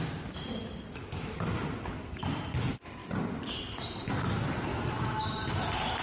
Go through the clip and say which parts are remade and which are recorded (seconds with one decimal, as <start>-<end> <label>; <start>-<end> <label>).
0.0-1.0 recorded; 1.0-1.6 remade; 1.6-4.7 recorded; 4.7-5.3 remade; 5.3-6.0 recorded